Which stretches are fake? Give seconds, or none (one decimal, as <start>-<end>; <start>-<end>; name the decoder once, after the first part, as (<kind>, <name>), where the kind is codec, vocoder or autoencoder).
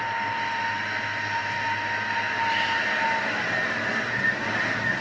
none